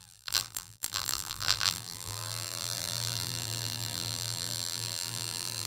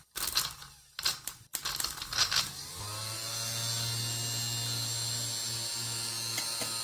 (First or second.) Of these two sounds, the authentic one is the second